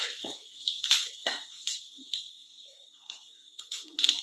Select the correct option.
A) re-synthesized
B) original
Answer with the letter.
A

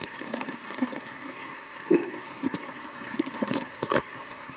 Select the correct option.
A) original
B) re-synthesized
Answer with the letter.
B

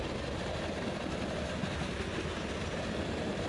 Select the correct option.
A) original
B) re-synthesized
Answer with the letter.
A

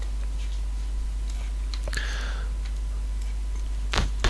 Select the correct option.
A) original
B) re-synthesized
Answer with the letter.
A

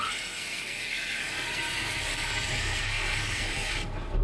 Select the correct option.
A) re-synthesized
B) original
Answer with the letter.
A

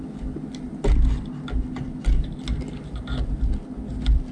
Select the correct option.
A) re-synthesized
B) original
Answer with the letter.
B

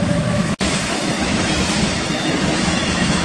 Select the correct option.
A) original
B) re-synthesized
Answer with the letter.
B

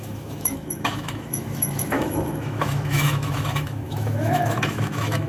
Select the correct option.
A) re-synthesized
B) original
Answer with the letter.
A